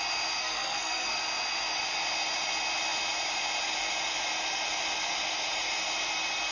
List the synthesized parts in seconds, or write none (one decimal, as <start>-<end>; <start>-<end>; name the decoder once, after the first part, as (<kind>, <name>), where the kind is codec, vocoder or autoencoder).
0.4-1.2 (codec, SNAC)